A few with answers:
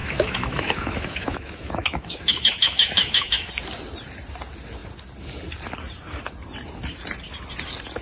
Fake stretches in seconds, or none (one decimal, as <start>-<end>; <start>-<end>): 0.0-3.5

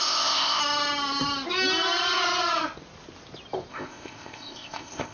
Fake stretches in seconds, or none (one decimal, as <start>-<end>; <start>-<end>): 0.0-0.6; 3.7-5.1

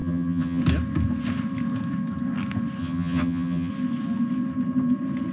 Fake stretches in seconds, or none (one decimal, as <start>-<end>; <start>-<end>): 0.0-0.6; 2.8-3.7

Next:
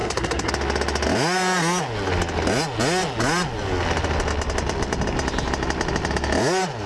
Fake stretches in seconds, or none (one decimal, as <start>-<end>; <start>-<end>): 0.0-0.5

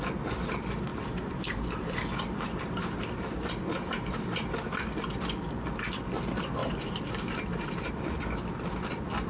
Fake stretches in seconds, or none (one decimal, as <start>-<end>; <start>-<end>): 0.9-4.5; 6.6-7.9